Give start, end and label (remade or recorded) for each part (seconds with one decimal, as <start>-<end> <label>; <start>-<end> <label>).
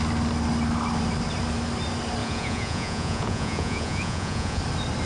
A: 0.0-2.2 recorded; 2.2-4.6 remade; 4.6-5.1 recorded